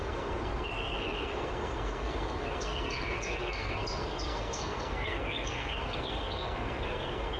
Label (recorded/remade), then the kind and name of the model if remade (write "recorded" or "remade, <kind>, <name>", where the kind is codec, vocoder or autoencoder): remade, codec, SNAC